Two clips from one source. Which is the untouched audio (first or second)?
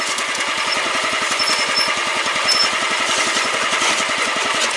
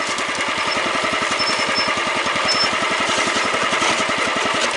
second